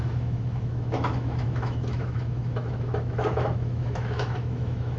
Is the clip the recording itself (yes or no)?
no